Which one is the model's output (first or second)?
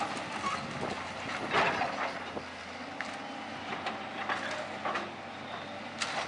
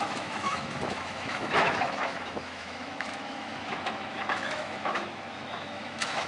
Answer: second